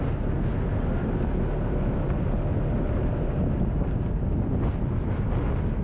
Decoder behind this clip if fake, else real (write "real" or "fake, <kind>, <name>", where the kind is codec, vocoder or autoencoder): real